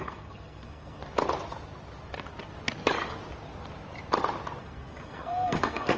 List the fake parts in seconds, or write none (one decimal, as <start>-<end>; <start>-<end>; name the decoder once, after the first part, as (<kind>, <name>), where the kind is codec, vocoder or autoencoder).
0.0-1.0 (codec, SNAC); 4.6-6.0